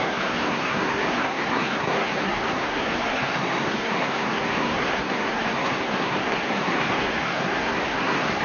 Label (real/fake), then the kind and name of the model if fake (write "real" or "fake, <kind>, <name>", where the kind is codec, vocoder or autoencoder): fake, codec, SNAC